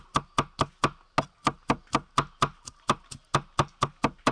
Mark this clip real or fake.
real